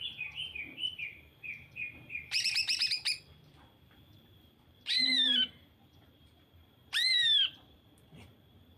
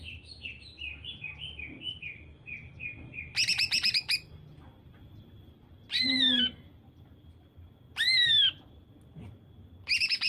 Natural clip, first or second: second